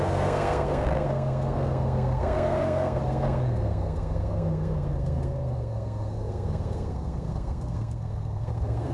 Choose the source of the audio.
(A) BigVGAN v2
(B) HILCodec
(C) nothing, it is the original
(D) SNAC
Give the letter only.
D